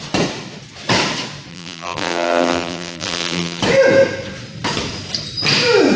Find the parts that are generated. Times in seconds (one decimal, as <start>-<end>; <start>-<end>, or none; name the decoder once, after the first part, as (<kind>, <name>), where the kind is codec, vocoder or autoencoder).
1.5-3.6 (vocoder, BigVGAN v2)